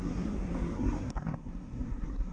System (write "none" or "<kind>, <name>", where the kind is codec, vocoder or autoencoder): codec, SNAC